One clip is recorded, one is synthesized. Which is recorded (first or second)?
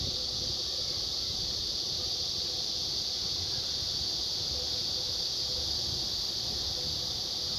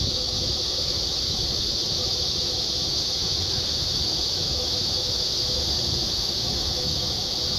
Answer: first